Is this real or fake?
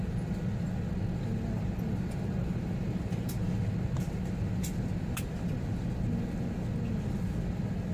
real